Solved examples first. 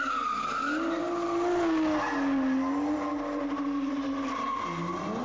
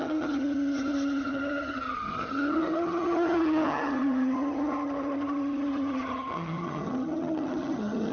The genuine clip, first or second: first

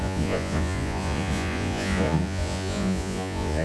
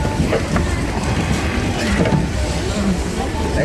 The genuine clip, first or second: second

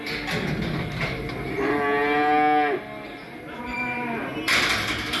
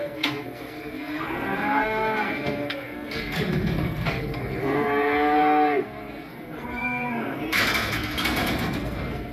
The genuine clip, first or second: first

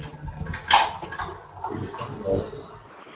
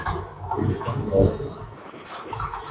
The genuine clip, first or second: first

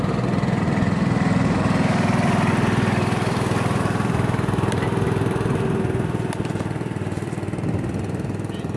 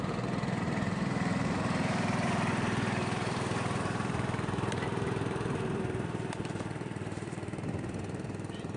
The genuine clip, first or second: first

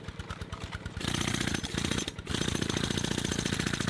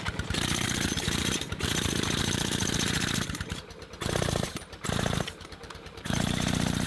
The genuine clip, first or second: first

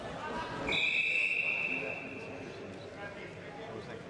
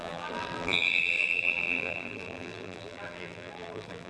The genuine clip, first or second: first